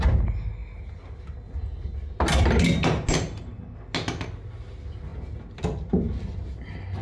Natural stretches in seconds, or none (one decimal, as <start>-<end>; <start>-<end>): 0.0-7.0